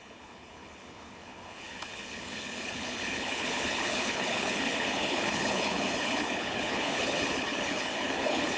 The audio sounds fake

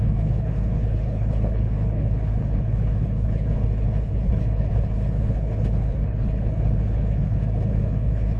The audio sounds fake